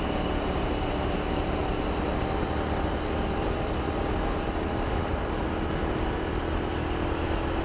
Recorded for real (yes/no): yes